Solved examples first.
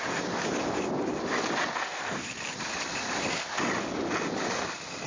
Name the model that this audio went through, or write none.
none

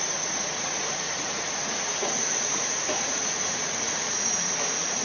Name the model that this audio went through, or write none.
vocoder, Vocos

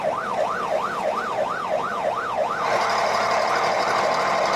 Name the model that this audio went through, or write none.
none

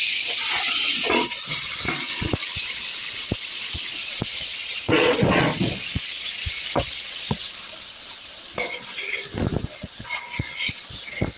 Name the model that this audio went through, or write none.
vocoder, Vocos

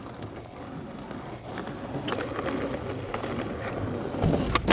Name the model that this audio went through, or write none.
none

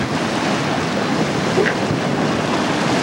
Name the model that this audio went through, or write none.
none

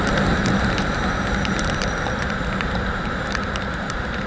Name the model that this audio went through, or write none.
vocoder, BigVGAN v2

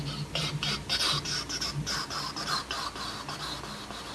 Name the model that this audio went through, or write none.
none